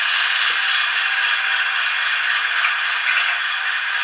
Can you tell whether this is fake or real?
real